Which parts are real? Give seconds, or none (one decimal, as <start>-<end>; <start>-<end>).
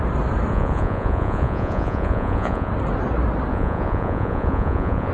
0.0-0.5; 2.7-3.5